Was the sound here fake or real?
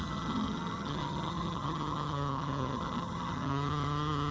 fake